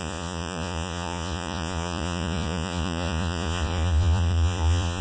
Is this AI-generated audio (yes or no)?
yes